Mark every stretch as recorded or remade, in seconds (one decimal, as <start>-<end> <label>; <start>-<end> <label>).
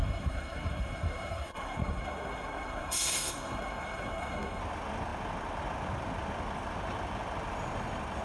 0.0-4.6 remade; 4.6-8.2 recorded